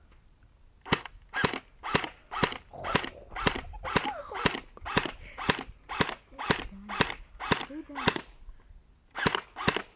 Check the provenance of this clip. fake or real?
real